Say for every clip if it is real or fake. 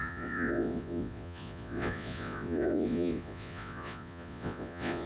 fake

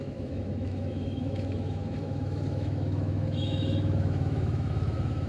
fake